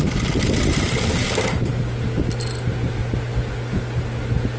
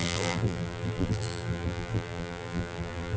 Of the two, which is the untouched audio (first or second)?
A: first